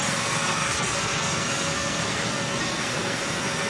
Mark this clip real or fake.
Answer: fake